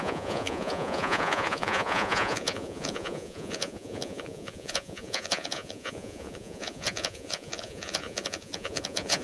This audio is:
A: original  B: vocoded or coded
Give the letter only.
B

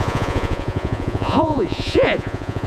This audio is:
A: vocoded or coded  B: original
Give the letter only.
A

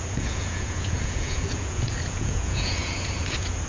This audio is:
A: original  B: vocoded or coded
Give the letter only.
B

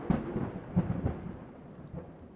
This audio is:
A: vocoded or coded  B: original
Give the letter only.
B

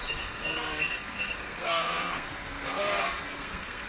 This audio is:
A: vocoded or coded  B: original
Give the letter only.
A